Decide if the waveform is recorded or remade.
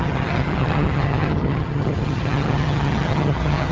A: remade